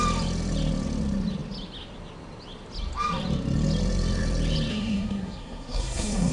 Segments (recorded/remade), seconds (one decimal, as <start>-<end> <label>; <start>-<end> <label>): 0.0-4.7 recorded; 4.7-6.3 remade